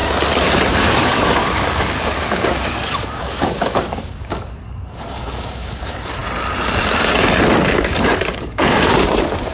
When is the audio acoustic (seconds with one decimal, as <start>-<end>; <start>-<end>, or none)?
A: 0.0-0.7; 6.2-7.8

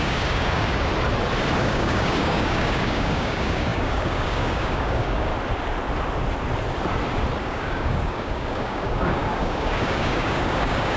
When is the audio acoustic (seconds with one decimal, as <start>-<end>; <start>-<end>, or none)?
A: 0.9-1.6; 5.3-7.4

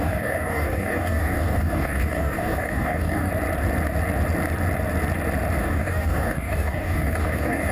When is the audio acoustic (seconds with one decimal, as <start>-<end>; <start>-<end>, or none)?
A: 3.3-5.6